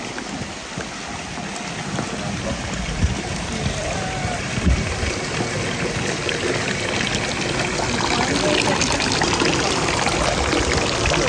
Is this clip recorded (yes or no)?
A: yes